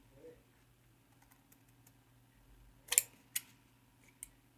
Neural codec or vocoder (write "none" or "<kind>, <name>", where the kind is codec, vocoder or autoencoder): none